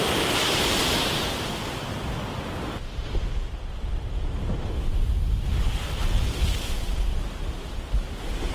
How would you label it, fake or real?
real